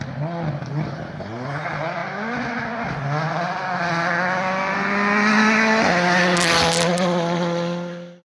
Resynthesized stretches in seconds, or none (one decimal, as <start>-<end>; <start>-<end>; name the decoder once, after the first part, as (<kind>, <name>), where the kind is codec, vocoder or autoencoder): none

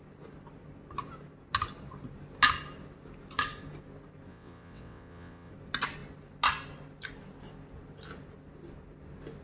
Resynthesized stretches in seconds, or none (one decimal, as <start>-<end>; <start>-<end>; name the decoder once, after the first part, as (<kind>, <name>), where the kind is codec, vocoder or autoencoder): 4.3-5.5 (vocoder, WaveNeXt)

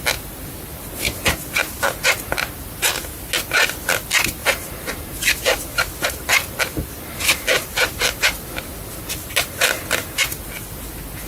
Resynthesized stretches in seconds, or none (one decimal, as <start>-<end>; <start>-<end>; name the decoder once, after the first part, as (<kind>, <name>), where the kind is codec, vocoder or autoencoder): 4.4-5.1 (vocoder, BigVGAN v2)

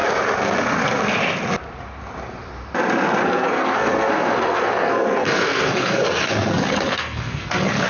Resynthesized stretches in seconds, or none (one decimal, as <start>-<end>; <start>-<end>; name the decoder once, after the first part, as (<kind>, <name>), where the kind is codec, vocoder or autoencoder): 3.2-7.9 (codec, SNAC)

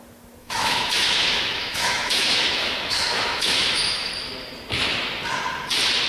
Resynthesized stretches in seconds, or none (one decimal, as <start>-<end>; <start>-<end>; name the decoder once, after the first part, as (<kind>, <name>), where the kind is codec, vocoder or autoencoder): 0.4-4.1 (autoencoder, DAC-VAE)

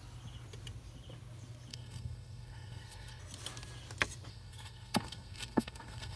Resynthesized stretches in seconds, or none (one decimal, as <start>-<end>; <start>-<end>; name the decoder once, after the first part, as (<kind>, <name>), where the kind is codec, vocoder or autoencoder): 1.7-3.2 (codec, SNAC); 4.3-6.2

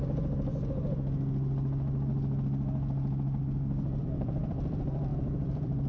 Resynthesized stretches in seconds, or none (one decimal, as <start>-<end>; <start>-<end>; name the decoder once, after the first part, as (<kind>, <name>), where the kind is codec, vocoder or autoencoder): 0.0-0.5 (vocoder, BigVGAN v2); 4.0-5.9

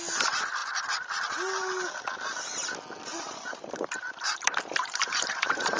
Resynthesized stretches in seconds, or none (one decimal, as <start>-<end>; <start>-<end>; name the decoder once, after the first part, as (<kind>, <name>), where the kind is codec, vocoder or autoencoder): 3.1-5.8 (vocoder, BigVGAN v2)